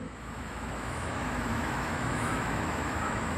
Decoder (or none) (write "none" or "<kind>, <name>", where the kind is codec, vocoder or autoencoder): autoencoder, DAC-VAE